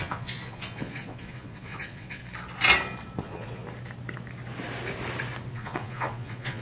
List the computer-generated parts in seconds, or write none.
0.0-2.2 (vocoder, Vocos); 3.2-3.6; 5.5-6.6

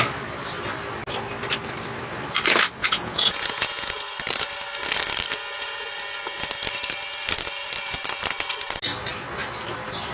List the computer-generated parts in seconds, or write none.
2.8-3.9 (vocoder, Vocos)

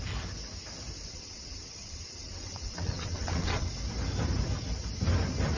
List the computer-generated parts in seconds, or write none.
1.1-3.7 (vocoder, WaveNeXt)